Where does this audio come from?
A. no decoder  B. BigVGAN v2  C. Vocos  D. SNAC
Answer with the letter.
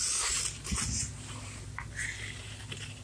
A